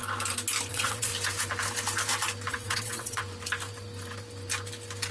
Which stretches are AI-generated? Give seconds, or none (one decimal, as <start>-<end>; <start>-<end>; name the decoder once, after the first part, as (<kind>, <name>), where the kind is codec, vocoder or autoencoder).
0.7-1.1 (vocoder, WaveNeXt); 2.5-3.2